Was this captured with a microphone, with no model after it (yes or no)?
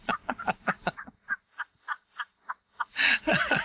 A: no